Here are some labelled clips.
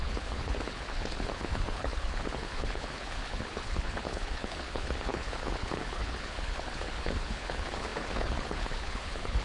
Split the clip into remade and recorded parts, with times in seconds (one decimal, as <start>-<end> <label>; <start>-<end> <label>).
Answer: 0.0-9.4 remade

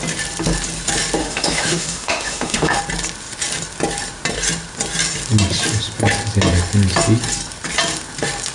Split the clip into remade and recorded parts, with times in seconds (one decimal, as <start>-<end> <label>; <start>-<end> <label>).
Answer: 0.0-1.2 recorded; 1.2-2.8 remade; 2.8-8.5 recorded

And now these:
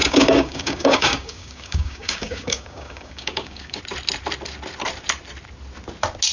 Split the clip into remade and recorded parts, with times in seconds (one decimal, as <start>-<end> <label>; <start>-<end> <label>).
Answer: 0.0-3.8 remade; 3.8-6.3 recorded

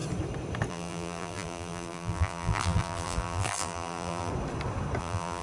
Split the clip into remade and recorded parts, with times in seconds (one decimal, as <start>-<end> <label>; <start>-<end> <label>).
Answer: 0.0-0.7 recorded; 0.7-4.3 remade; 4.3-5.0 recorded; 5.0-5.4 remade

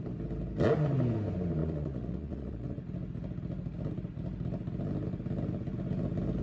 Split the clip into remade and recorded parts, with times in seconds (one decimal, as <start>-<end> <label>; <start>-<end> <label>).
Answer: 0.0-1.6 recorded; 1.6-2.8 remade; 2.8-6.4 recorded